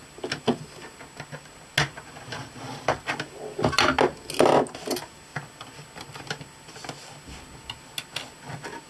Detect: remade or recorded recorded